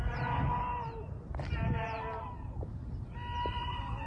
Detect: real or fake real